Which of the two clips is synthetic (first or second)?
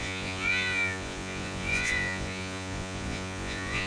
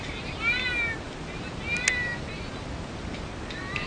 first